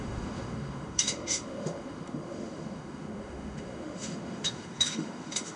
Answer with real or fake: fake